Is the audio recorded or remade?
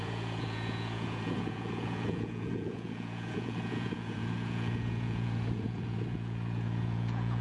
remade